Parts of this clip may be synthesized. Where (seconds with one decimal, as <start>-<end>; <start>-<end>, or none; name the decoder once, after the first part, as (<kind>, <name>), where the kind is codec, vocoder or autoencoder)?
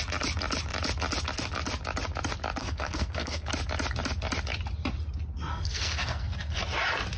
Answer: 2.6-3.5 (codec, SNAC); 5.5-6.6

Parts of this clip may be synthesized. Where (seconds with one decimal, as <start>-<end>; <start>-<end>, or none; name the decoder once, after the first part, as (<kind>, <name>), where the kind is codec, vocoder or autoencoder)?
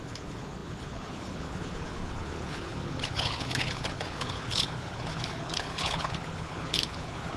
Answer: 0.0-7.4 (codec, HILCodec)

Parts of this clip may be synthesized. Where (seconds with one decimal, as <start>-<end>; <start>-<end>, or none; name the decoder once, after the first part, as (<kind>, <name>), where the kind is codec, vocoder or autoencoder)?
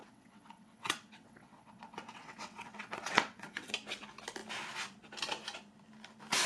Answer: 0.0-3.7 (vocoder, WaveNeXt)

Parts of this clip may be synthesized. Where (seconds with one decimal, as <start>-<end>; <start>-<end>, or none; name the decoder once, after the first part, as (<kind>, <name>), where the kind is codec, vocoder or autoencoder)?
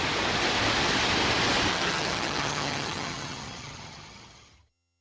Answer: 1.7-5.0 (vocoder, HiFi-GAN)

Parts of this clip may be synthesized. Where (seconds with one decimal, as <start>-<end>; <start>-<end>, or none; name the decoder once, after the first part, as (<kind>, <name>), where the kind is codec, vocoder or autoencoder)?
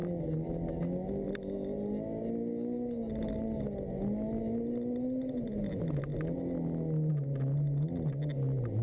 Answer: none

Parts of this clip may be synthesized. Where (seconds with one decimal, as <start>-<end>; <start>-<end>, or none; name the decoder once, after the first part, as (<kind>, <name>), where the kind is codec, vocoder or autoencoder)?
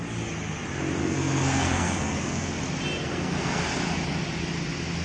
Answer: 1.0-2.6 (codec, SNAC); 3.0-3.6